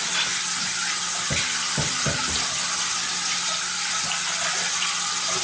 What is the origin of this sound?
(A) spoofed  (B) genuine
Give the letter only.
B